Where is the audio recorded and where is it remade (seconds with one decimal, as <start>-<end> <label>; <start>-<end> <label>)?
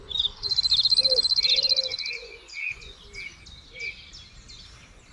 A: 0.0-0.5 remade; 0.5-1.9 recorded; 1.9-3.0 remade; 3.0-5.1 recorded